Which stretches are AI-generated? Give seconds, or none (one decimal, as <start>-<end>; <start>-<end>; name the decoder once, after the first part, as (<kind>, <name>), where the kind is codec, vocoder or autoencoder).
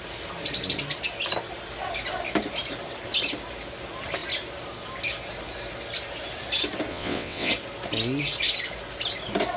6.9-7.5 (vocoder, WaveNeXt)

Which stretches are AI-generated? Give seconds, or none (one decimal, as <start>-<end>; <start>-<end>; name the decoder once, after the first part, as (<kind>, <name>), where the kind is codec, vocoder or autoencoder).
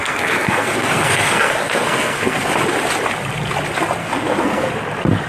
0.0-2.5 (codec, SNAC); 4.0-4.7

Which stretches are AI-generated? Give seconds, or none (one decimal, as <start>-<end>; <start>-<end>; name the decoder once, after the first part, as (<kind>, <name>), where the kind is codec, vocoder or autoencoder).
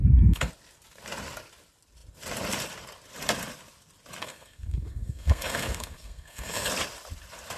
0.0-0.5 (codec, SNAC); 4.2-6.7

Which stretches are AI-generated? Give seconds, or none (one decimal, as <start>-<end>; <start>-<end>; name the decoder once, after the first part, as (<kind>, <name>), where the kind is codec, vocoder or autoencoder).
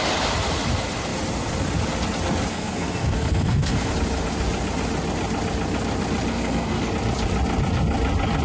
2.5-3.9 (codec, SNAC); 6.3-6.9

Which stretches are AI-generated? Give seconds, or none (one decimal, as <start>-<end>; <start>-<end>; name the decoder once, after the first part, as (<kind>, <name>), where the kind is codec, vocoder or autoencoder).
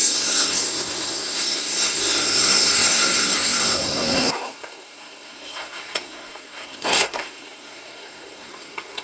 0.0-9.0 (codec, SNAC)